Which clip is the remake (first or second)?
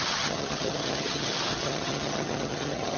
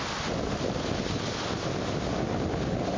first